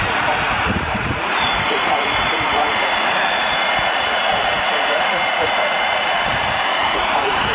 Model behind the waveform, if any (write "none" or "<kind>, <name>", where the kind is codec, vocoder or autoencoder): vocoder, Vocos